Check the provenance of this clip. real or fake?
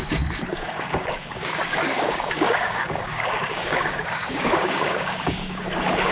fake